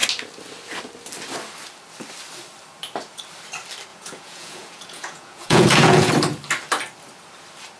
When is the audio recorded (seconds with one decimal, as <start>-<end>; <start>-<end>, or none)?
0.0-3.9; 6.1-7.8